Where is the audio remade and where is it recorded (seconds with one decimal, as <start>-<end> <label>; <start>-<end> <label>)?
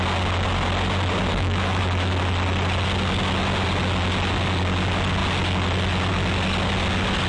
0.0-1.3 recorded; 1.3-1.8 remade; 1.8-7.3 recorded